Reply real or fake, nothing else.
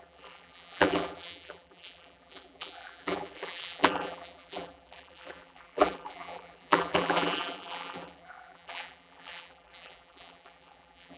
fake